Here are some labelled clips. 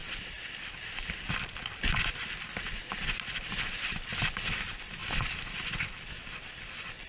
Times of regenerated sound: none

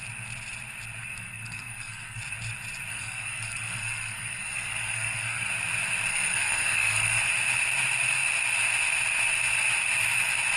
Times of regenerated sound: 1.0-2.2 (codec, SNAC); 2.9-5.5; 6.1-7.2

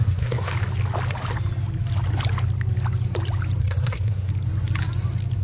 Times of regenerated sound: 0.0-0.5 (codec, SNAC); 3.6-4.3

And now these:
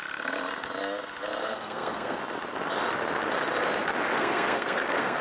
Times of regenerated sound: 1.4-2.2 (codec, SNAC); 4.2-5.2

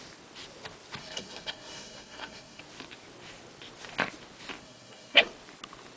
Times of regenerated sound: 1.0-2.6 (codec, SNAC); 4.6-5.3

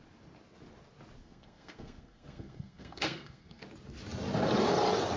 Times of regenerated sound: 1.2-3.6 (codec, SNAC)